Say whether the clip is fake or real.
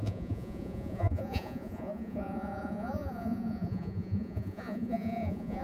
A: fake